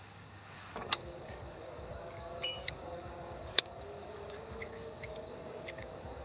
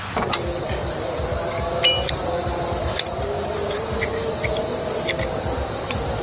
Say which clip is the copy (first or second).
first